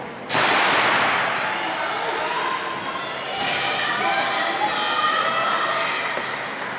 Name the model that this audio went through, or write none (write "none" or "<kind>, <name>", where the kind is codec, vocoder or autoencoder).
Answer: none